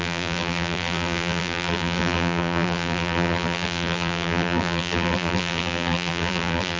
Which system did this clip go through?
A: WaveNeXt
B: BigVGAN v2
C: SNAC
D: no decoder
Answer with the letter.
B